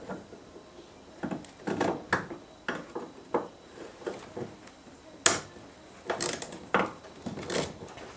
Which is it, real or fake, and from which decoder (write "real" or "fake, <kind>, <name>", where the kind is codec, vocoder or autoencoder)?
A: real